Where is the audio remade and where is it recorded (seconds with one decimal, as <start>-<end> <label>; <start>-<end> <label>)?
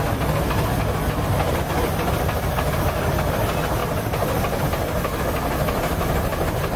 0.0-6.8 recorded